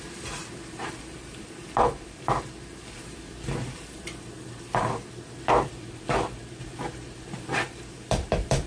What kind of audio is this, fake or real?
fake